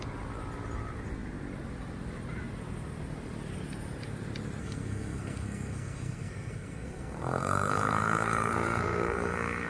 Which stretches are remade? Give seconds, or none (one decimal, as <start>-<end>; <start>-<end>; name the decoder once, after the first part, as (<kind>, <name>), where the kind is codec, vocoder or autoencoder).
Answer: 4.6-9.7 (codec, SNAC)

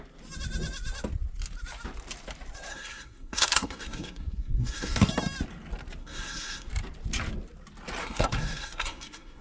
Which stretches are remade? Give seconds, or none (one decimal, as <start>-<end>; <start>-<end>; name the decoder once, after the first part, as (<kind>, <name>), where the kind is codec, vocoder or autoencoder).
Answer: 2.7-5.1 (codec, SNAC); 6.0-6.7; 8.0-9.4